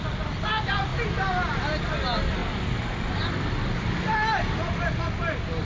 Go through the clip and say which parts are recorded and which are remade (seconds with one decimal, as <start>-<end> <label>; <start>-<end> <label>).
0.0-5.6 recorded